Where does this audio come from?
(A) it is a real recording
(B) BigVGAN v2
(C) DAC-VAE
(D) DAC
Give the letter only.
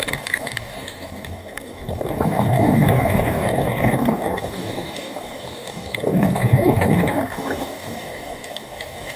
D